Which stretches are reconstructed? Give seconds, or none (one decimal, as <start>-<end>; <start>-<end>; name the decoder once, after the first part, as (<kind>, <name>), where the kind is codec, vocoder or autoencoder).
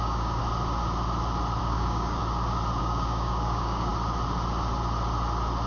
0.0-0.4 (codec, DAC); 1.6-2.2; 2.8-3.9